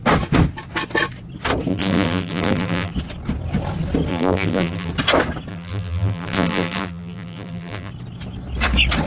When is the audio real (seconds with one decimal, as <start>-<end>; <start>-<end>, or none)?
0.0-1.7; 2.9-4.1; 4.9-5.5; 7.9-9.1